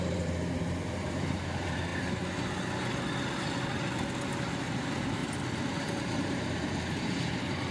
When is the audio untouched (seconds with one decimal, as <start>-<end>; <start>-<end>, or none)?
1.9-4.8; 5.2-5.8